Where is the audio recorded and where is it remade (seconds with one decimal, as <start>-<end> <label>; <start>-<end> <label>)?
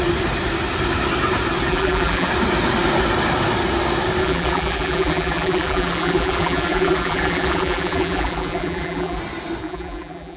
0.0-1.7 recorded; 1.7-2.3 remade; 2.3-4.2 recorded; 4.2-9.2 remade; 9.2-9.6 recorded; 9.6-10.4 remade